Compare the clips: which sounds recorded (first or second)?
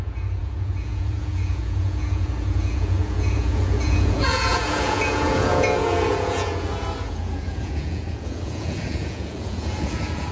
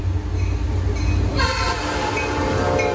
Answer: second